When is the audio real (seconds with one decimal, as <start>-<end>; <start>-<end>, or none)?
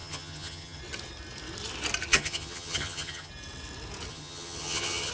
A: 0.8-2.1; 3.3-4.1